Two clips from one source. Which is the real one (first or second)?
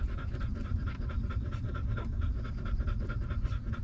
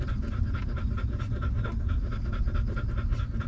second